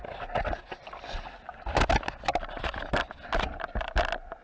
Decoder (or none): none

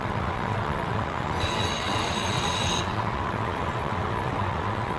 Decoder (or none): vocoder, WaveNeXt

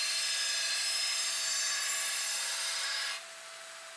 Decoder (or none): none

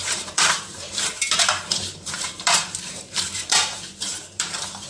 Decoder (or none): vocoder, BigVGAN v2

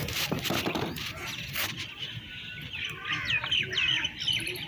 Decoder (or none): none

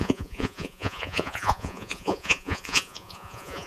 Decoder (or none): vocoder, Vocos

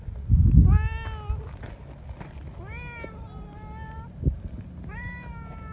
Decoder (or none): none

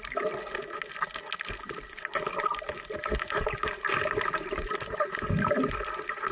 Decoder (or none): none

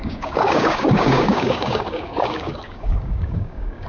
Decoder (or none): codec, DAC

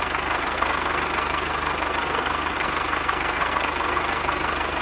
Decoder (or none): codec, SNAC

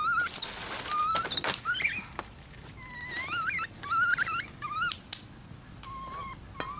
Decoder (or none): none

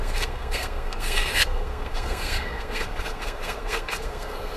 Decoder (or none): codec, SNAC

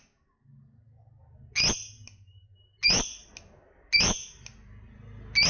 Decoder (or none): none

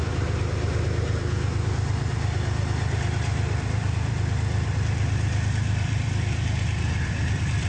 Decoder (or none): vocoder, BigVGAN v2